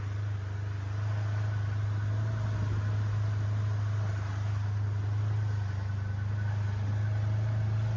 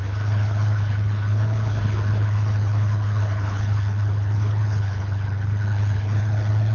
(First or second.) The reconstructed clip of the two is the second